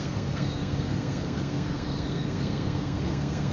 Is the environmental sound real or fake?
fake